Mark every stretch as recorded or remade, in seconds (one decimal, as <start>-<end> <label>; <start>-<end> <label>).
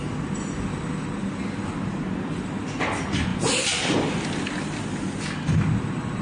0.0-6.2 recorded